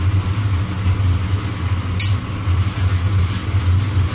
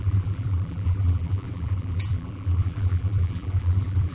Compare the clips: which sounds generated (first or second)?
second